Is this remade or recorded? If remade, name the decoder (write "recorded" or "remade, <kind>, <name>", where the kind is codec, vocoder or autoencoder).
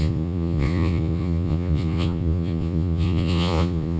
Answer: remade, vocoder, Vocos